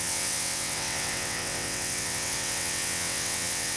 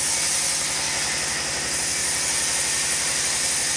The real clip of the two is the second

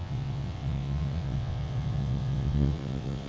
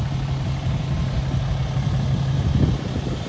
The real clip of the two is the second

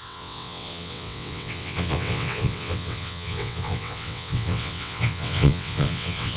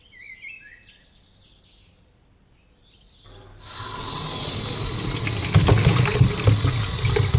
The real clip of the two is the second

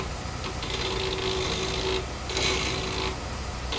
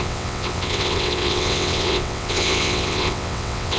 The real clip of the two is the first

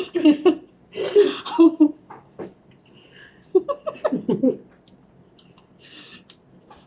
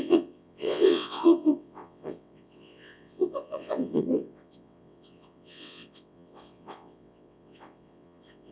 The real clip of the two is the first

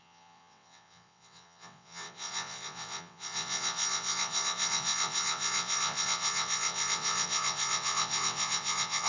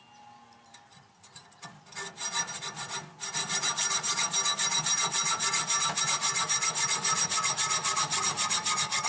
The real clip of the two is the second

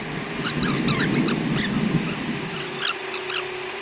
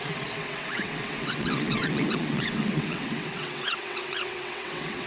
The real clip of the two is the first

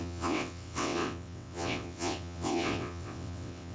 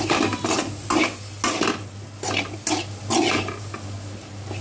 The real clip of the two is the second